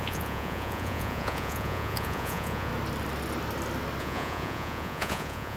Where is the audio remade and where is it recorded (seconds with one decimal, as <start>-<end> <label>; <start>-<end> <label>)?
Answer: 0.0-2.7 remade; 2.7-4.0 recorded; 4.0-5.6 remade